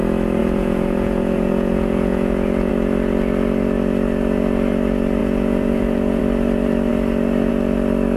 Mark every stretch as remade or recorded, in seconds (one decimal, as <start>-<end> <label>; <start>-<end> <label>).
0.0-0.4 recorded; 0.4-2.7 remade; 2.7-5.2 recorded; 5.2-6.2 remade; 6.2-8.2 recorded